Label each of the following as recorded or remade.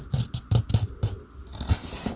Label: recorded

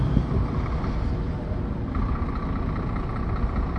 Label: recorded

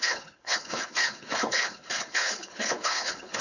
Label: remade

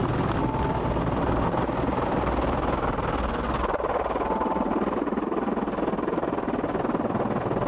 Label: recorded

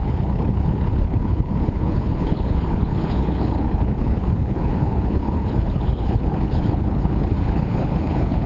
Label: remade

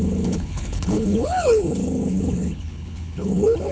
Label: remade